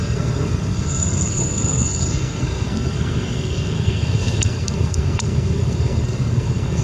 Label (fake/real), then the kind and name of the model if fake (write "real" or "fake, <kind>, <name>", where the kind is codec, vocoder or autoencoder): fake, codec, SNAC